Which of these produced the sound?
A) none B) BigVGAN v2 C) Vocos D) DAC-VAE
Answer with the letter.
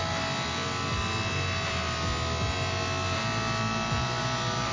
A